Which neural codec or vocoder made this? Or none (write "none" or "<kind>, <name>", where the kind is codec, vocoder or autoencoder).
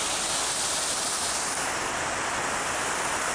none